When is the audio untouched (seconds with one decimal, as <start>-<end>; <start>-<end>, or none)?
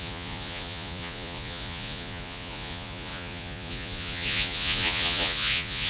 none